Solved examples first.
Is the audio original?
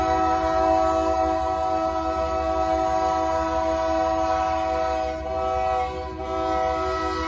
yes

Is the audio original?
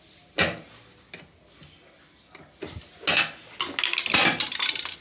yes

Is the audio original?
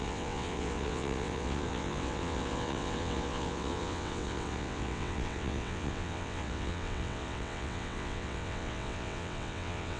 no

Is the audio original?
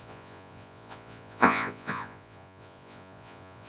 no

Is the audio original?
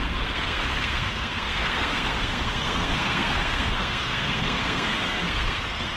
no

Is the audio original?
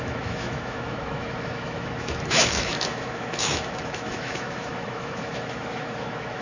no